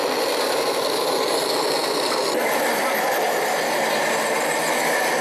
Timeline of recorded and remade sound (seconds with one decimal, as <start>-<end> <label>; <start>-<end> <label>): 0.0-1.2 remade; 1.2-1.8 recorded; 1.8-3.6 remade; 3.6-5.2 recorded